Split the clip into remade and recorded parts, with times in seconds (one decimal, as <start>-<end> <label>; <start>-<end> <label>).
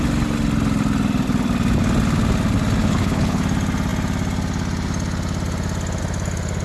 0.0-2.8 recorded; 2.8-3.4 remade; 3.4-6.6 recorded